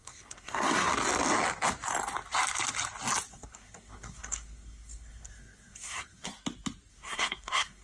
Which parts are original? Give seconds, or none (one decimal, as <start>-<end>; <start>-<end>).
0.9-3.3; 6.3-6.9